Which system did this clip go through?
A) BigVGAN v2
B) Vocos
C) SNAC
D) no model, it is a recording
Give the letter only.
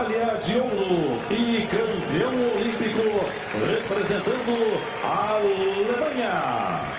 D